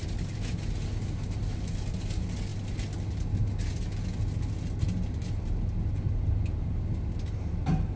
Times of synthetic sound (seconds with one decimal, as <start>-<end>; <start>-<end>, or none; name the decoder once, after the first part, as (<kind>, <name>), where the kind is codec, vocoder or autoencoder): none